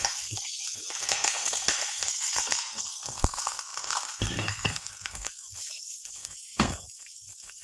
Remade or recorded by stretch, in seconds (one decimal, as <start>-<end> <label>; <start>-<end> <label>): 0.0-7.6 remade